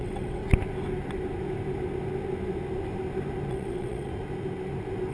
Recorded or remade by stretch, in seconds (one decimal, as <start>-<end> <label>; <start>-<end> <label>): 0.0-0.4 remade; 0.4-3.5 recorded; 3.5-4.1 remade; 4.1-5.1 recorded